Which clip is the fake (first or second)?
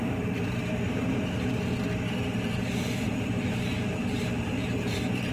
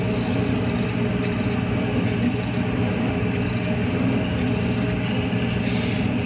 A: first